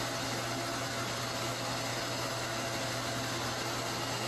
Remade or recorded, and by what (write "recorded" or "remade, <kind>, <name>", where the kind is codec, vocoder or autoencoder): recorded